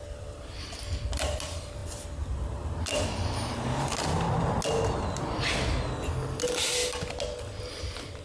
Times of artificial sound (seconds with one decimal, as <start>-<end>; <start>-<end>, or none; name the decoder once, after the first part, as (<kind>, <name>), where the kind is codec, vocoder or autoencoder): none